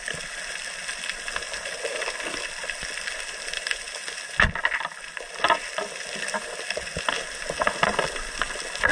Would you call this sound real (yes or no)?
yes